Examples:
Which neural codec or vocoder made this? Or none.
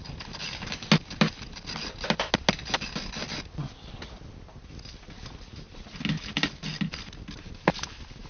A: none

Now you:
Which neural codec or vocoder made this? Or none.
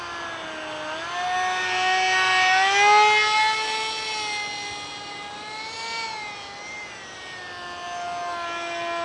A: none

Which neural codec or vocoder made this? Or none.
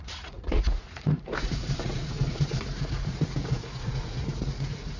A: vocoder, Vocos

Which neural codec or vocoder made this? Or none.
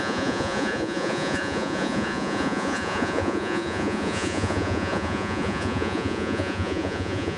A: vocoder, Vocos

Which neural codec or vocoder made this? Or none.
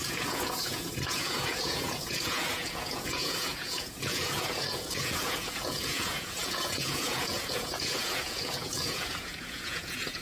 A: vocoder, Vocos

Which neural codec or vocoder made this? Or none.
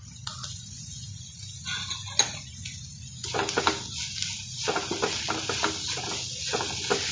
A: none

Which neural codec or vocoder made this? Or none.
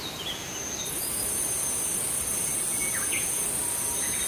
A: none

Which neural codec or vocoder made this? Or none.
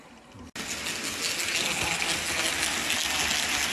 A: none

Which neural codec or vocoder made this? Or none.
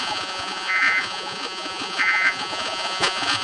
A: vocoder, Vocos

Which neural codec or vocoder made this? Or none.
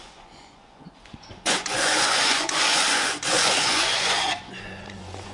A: vocoder, Vocos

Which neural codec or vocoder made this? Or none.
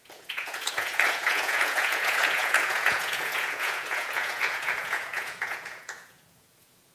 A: vocoder, Vocos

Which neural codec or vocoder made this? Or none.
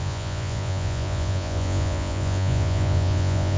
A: vocoder, Vocos